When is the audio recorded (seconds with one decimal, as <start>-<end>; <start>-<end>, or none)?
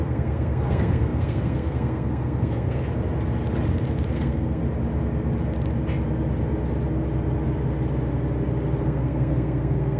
2.8-4.1; 4.6-8.8